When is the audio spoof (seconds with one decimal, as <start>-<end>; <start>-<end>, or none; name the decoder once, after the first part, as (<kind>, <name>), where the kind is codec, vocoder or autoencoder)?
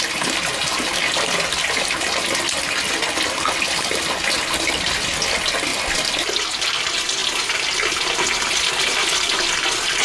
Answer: none